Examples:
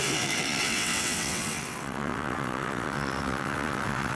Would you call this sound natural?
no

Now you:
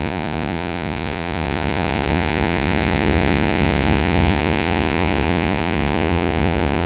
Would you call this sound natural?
no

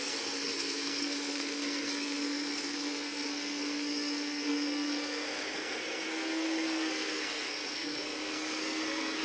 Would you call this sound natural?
no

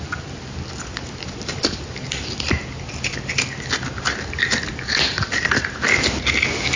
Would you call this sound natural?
yes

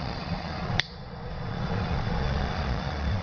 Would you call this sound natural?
no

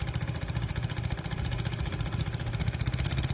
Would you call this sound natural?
yes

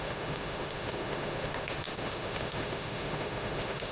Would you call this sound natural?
no